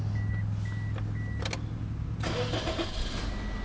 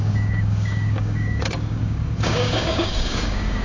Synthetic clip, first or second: second